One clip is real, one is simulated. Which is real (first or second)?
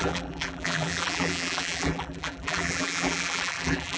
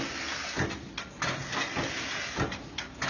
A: second